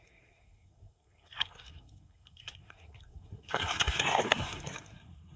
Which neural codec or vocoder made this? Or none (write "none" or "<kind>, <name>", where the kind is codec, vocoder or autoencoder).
codec, SNAC